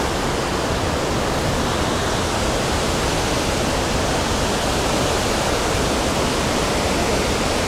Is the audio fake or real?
real